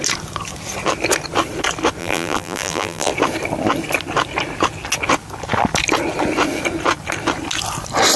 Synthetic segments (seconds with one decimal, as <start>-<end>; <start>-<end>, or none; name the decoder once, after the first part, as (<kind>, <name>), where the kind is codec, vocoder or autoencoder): 2.0-3.1 (vocoder, BigVGAN v2)